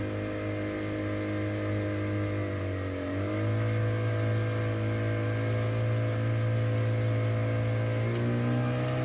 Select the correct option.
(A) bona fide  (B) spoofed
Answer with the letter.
A